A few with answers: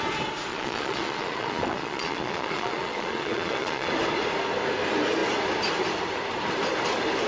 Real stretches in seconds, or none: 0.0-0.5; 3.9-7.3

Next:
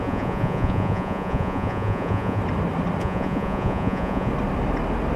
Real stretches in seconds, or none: 2.4-3.0; 4.3-5.2